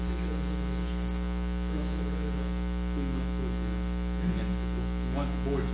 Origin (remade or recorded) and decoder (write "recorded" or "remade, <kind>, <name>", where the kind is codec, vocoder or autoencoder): recorded